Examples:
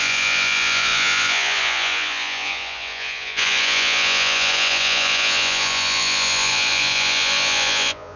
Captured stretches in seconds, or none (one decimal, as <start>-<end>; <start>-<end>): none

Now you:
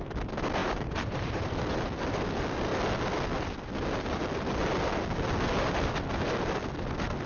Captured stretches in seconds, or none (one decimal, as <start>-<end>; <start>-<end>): 0.0-0.6; 1.4-7.3

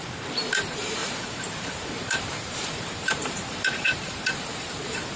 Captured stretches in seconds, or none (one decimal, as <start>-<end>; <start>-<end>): none

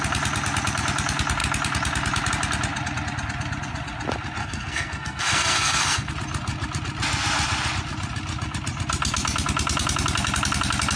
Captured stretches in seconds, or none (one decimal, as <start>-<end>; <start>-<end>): 0.0-4.4; 6.1-11.0

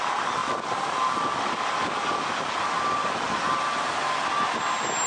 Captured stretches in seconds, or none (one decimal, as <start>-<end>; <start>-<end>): 0.0-5.1

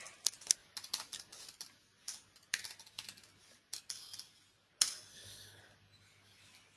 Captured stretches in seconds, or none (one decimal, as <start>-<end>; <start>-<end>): 0.0-5.1; 5.6-6.8

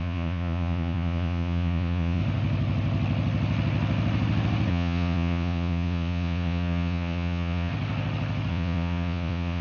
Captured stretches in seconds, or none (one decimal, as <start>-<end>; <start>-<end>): 2.2-4.7; 7.7-8.5

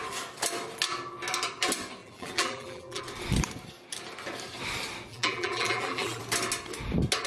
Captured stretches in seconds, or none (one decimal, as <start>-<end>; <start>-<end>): 0.0-2.0; 3.0-5.1; 6.2-7.3